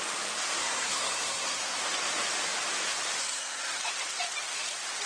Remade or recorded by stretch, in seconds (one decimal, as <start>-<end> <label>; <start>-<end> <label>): 0.0-0.6 recorded; 0.6-1.8 remade; 1.8-3.2 recorded; 3.2-3.8 remade; 3.8-5.1 recorded